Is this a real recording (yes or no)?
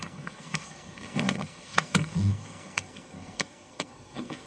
no